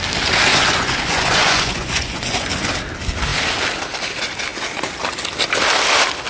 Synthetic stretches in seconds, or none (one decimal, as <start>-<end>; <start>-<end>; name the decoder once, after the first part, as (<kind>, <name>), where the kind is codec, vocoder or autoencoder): 0.5-2.5 (vocoder, Vocos)